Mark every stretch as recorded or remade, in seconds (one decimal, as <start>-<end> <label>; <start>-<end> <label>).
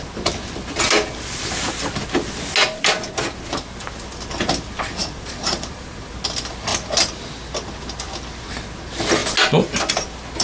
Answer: 0.0-5.0 recorded; 5.0-6.1 remade; 6.1-10.4 recorded